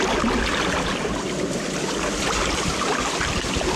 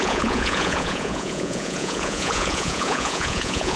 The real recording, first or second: first